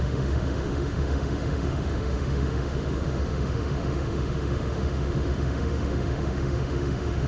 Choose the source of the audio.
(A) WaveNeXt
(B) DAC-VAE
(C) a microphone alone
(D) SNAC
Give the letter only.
B